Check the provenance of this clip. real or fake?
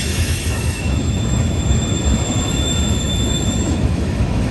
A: fake